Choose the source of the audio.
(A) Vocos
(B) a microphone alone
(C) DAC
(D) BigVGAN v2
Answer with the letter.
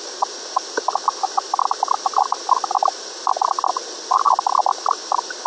B